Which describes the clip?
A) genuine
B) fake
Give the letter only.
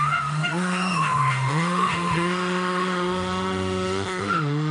B